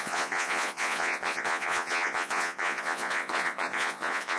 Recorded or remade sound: remade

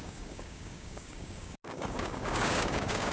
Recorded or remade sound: remade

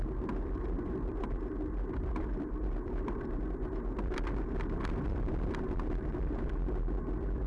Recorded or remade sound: remade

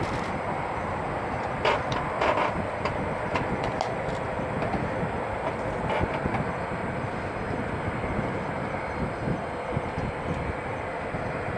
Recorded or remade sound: recorded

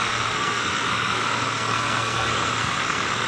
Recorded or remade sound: remade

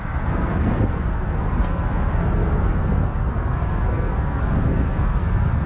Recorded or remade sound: remade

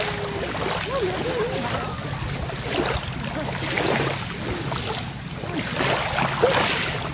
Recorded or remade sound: recorded